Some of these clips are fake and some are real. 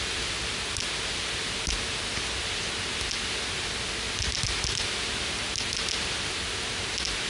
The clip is real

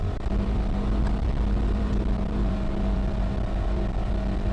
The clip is fake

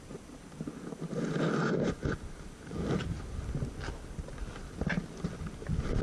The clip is real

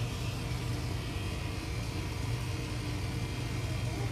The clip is real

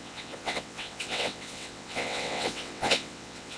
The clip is fake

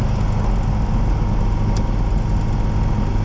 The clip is real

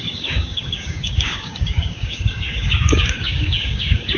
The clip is fake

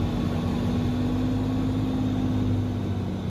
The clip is real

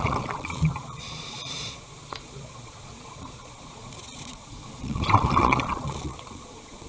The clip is fake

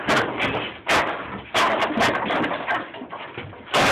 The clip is real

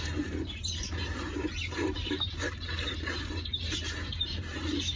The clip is fake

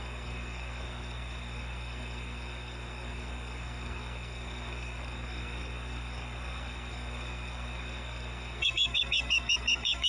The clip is fake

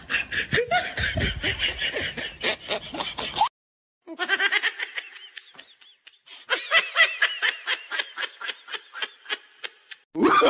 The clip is real